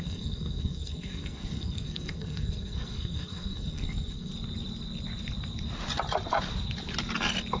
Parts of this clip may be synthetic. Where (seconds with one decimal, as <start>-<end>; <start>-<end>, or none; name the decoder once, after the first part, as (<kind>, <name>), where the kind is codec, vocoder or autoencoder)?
0.0-4.3 (codec, SNAC)